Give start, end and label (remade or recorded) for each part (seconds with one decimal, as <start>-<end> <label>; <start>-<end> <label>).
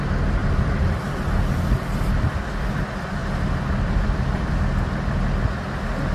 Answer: 0.0-0.4 recorded; 0.4-2.8 remade; 2.8-3.2 recorded; 3.2-4.5 remade; 4.5-6.1 recorded